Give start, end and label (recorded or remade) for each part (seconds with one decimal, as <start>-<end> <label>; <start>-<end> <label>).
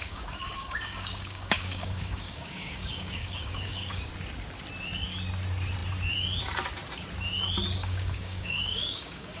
0.0-4.1 remade; 4.1-7.8 recorded; 7.8-9.4 remade